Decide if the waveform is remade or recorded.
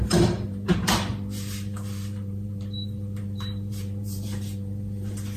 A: remade